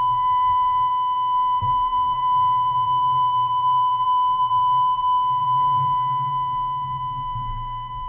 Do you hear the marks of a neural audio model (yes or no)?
yes